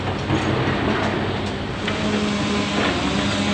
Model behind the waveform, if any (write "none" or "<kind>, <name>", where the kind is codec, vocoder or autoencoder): none